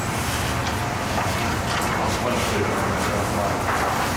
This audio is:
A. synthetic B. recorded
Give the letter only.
A